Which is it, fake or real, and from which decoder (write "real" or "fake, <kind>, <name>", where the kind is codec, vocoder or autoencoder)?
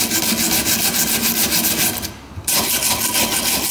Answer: real